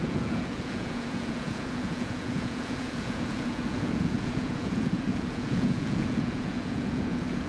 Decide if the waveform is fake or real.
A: fake